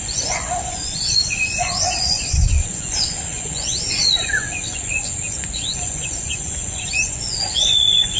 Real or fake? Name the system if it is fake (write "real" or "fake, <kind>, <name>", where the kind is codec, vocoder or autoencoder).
fake, vocoder, Vocos